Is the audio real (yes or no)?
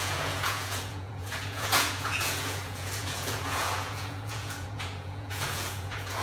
no